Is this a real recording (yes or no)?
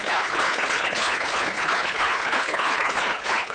no